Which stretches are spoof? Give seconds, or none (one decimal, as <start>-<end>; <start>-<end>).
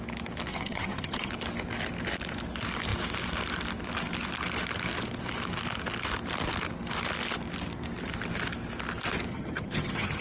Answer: 0.5-1.3; 9.3-10.2